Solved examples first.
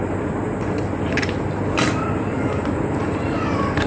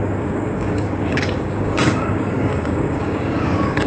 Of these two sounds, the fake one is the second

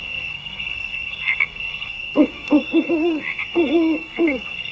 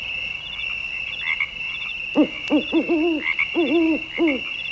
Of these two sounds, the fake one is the first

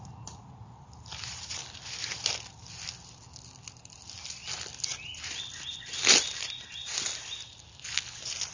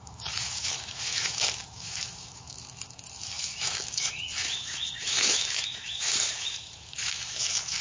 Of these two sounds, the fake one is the second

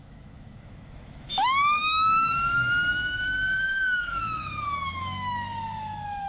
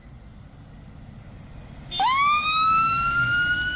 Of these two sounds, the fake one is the first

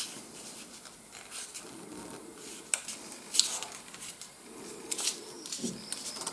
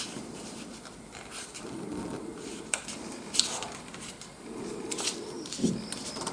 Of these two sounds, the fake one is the second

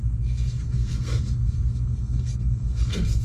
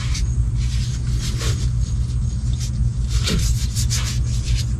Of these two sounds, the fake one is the first